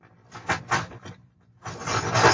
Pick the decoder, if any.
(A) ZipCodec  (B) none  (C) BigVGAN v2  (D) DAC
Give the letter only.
C